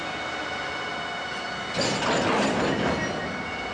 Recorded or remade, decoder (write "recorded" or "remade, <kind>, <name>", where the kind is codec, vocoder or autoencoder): recorded